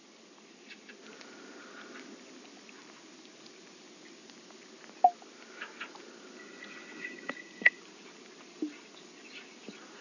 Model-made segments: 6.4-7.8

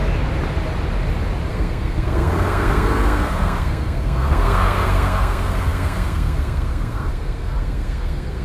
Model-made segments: 1.5-8.4

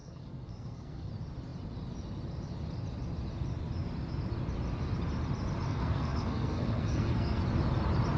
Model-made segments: 0.0-1.1; 5.7-7.4

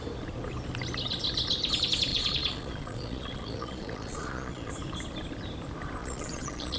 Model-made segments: 2.1-4.7; 6.0-6.8

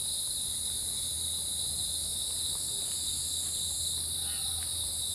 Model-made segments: none